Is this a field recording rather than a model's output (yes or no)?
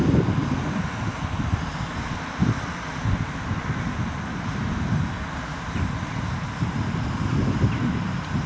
yes